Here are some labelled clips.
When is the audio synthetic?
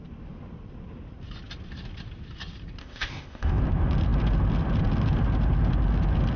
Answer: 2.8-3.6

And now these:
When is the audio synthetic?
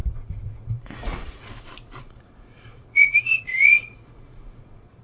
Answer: 0.0-1.5; 2.0-5.0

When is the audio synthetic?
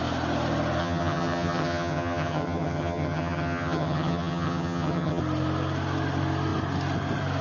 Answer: 0.8-5.2